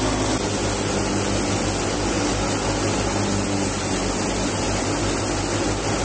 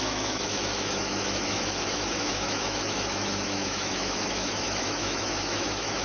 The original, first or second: first